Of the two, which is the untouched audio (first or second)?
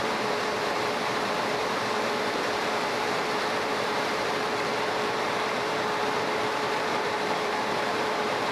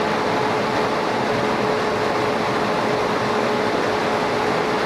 second